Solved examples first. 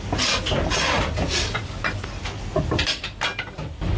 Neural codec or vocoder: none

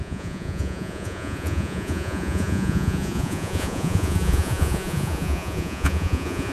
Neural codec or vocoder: vocoder, Vocos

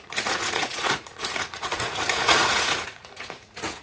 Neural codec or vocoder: vocoder, Vocos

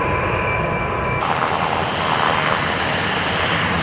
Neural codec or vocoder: none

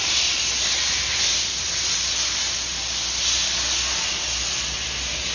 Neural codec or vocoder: none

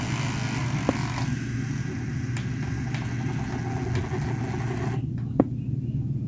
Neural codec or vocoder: none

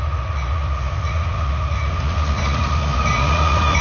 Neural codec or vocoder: vocoder, Vocos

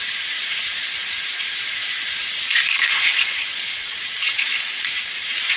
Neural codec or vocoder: vocoder, Vocos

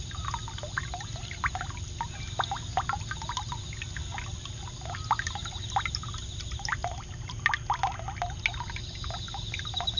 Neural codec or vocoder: none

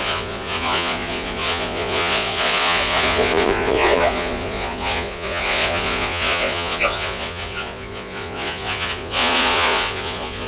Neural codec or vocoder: vocoder, Vocos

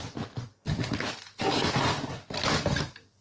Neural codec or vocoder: none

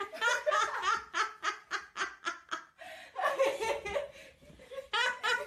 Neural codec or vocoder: none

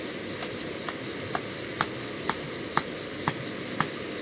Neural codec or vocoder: none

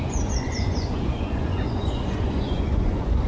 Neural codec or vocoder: vocoder, Vocos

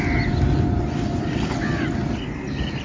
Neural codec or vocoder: none